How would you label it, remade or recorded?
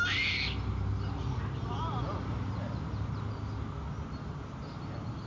recorded